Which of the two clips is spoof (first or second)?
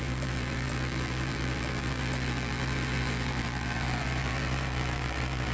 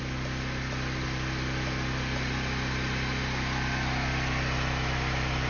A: first